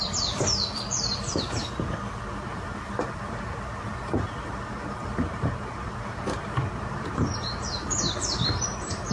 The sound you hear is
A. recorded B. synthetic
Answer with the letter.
B